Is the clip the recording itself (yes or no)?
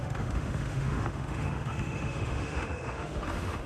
no